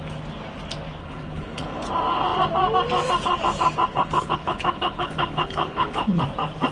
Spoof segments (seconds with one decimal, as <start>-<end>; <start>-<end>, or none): 1.0-1.9; 3.9-6.2

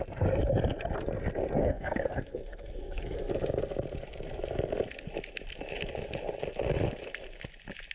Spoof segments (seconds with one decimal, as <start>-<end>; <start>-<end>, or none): 1.6-3.3